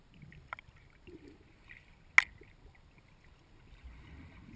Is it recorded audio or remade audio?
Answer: recorded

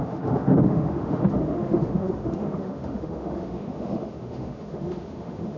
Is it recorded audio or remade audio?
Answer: remade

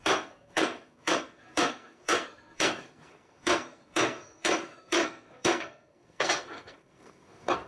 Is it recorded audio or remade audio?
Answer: remade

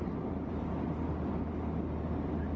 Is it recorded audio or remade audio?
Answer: recorded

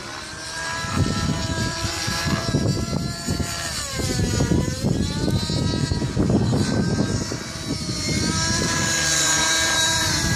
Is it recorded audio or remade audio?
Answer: remade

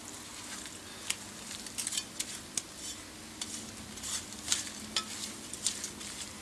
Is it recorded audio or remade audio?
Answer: recorded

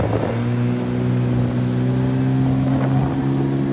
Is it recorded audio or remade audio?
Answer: recorded